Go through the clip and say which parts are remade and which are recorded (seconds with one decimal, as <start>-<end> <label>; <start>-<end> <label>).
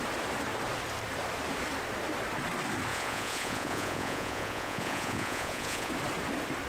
0.0-2.9 recorded; 2.9-5.9 remade; 5.9-6.7 recorded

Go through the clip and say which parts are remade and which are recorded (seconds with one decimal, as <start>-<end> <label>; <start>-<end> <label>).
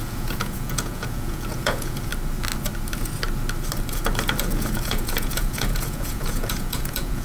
0.0-2.1 remade; 2.1-4.4 recorded; 4.4-7.2 remade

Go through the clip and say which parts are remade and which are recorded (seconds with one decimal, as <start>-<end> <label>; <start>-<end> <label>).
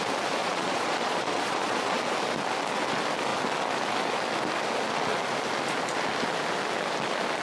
0.0-0.4 recorded; 0.4-2.0 remade; 2.0-7.4 recorded